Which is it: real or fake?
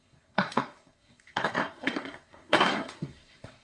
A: fake